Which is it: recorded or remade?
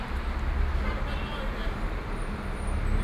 recorded